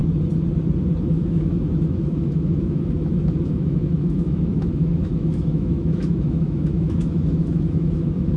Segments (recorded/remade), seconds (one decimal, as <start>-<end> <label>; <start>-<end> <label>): 0.0-1.0 recorded; 1.0-8.4 remade